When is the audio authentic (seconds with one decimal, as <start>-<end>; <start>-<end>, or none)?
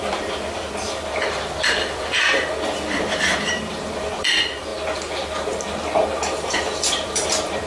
4.7-6.1